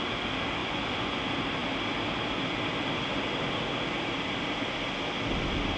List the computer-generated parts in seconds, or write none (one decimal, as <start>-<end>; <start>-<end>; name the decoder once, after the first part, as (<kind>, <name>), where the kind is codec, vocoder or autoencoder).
0.6-1.2 (vocoder, Vocos)